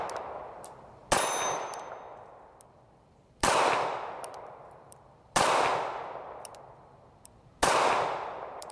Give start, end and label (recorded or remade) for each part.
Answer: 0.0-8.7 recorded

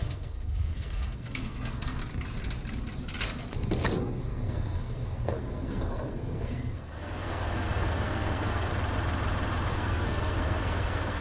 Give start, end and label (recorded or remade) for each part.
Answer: 0.0-2.0 remade; 2.0-4.2 recorded; 4.2-8.7 remade; 8.7-9.7 recorded; 9.7-11.2 remade

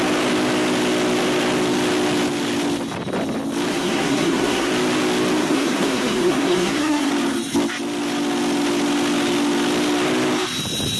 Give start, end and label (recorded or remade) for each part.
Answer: 0.0-3.7 recorded; 3.7-4.7 remade; 4.7-5.4 recorded; 5.4-7.1 remade; 7.1-11.0 recorded

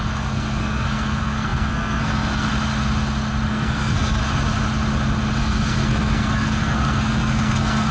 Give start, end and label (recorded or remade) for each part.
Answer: 0.0-2.5 remade; 2.5-3.5 recorded; 3.5-4.2 remade; 4.2-5.4 recorded; 5.4-7.9 remade

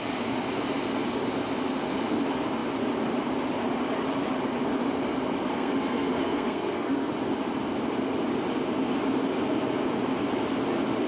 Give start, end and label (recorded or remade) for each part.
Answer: 0.0-5.5 recorded; 5.5-7.1 remade; 7.1-11.1 recorded